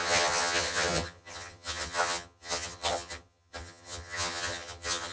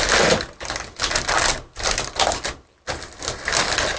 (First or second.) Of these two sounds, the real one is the second